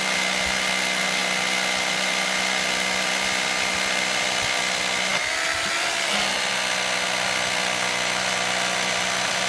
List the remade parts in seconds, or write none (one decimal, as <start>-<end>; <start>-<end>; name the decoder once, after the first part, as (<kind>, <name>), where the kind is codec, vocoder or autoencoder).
none